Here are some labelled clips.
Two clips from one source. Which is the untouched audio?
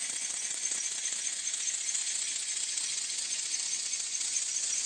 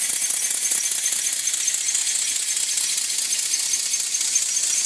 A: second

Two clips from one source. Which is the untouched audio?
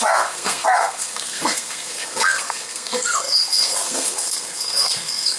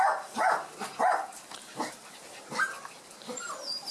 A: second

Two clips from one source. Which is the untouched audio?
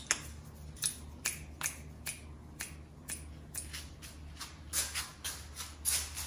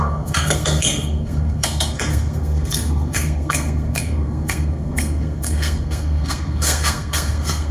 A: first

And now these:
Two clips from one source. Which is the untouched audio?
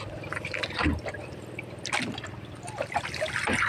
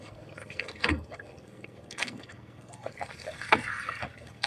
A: first